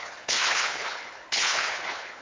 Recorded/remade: remade